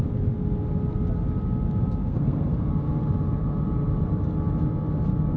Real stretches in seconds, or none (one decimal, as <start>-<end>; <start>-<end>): 0.0-2.0; 2.7-5.4